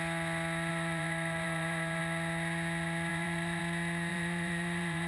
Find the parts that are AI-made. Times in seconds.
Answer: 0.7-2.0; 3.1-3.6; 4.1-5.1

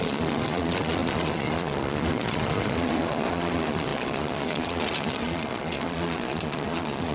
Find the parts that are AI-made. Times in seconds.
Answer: 0.0-7.1

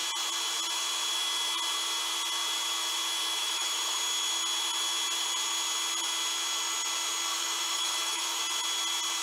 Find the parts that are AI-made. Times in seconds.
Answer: 3.4-4.0; 7.3-8.4